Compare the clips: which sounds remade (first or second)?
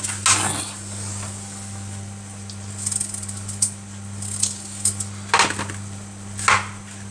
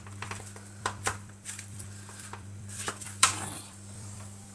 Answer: second